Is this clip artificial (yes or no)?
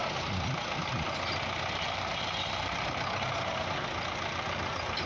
no